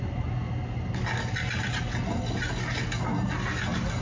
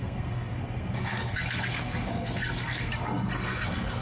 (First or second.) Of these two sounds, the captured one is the first